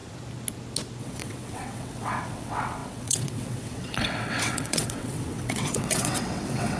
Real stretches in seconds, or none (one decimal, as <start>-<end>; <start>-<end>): 0.0-1.0